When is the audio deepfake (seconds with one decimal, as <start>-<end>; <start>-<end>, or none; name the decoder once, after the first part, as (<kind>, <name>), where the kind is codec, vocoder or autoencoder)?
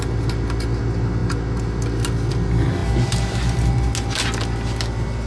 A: none